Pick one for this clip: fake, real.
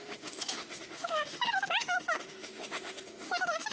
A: fake